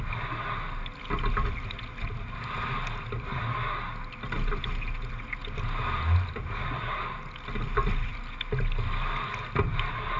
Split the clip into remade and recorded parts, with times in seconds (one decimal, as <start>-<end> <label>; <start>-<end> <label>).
0.0-10.2 recorded